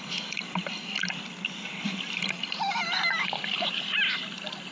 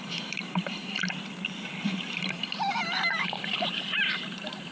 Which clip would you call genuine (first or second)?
first